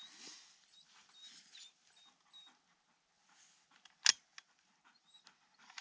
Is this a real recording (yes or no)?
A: yes